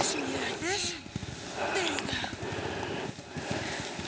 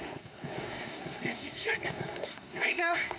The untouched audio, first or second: first